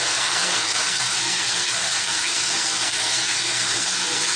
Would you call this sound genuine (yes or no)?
no